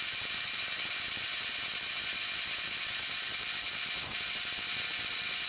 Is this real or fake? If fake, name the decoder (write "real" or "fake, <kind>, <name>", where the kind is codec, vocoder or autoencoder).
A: real